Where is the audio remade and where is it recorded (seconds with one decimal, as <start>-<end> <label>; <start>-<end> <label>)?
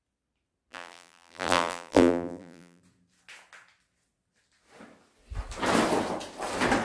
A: 0.0-0.7 recorded; 0.7-2.8 remade; 2.8-6.8 recorded